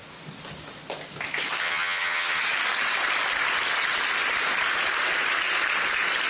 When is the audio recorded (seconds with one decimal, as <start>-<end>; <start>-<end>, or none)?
0.0-1.6; 2.4-6.3